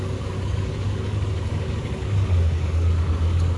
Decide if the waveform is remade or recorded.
remade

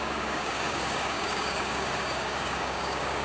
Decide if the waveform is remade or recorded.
remade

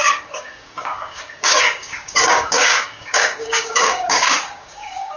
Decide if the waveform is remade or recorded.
remade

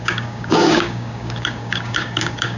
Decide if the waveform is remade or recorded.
remade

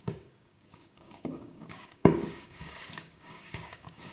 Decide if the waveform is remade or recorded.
remade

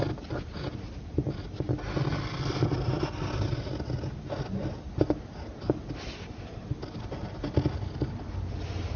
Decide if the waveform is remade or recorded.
recorded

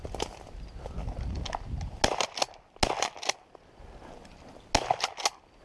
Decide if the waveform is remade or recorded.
recorded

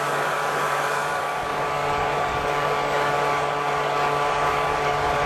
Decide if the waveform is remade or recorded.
remade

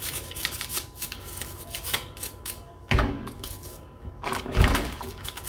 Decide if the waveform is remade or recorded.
remade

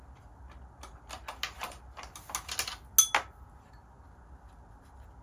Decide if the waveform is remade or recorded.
recorded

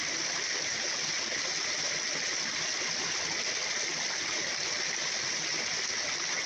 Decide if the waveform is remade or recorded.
recorded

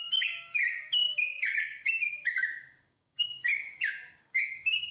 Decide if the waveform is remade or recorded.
remade